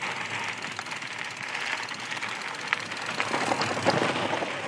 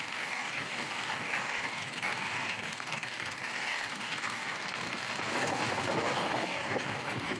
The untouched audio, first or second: first